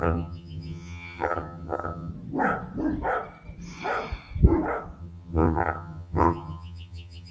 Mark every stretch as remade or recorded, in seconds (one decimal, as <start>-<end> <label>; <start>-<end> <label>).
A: 0.0-2.1 remade; 2.1-5.0 recorded; 5.0-7.3 remade